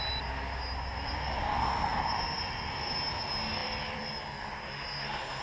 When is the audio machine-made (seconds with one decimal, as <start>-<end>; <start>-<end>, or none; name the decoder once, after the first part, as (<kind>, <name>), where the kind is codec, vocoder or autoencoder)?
1.9-2.9 (vocoder, BigVGAN v2); 3.6-4.1